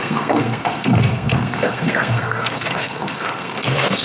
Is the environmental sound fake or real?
fake